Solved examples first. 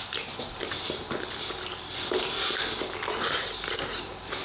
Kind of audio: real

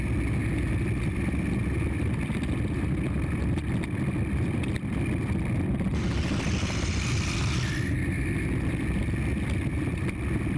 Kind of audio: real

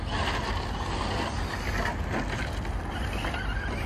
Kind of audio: real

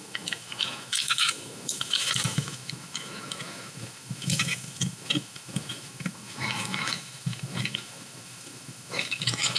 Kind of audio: fake